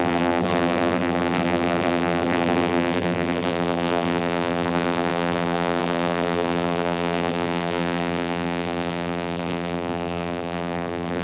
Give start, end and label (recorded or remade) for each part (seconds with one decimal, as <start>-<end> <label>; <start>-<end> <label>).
0.0-11.2 remade